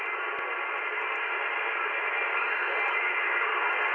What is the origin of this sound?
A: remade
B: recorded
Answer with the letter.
B